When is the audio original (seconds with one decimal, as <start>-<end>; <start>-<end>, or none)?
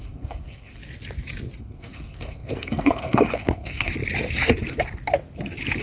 0.8-1.6; 3.9-5.8